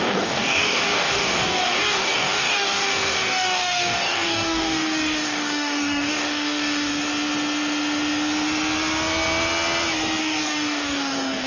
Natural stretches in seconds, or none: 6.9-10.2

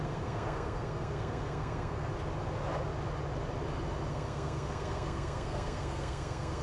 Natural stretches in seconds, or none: 2.1-4.1

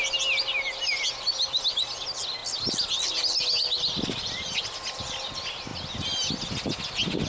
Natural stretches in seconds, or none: 0.0-7.3

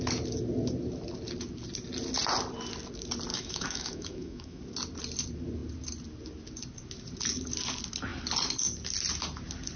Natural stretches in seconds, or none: 0.0-3.3; 4.6-9.8